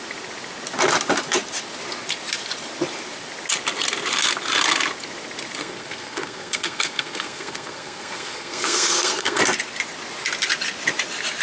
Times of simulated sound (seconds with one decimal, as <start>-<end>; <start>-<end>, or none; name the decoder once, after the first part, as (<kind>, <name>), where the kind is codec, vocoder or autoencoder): 5.6-9.4 (codec, SNAC)

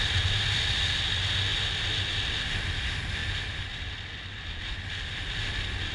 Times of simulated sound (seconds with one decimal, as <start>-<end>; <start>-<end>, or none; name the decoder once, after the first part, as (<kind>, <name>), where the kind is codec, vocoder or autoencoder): none

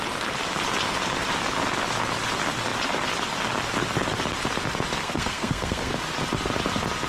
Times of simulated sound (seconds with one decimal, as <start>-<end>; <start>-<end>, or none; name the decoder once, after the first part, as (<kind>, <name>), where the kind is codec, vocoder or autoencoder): 5.0-5.9 (codec, SNAC)

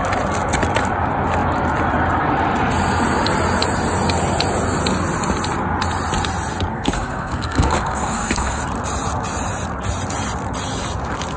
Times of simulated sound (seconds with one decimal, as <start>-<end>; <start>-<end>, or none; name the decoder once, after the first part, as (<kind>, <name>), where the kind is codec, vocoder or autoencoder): 6.7-8.6 (codec, SNAC)